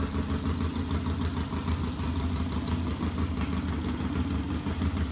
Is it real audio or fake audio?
real